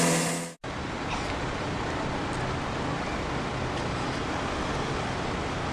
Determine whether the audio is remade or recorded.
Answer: recorded